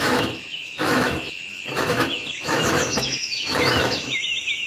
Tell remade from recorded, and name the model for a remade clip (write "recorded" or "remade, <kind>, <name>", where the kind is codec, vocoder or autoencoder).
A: remade, autoencoder, DAC-VAE